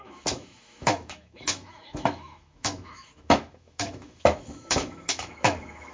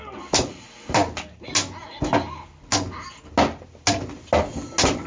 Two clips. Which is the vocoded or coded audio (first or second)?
first